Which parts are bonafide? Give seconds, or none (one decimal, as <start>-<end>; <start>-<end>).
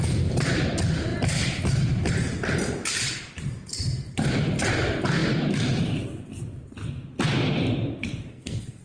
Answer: 0.0-8.3